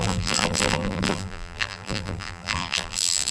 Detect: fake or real fake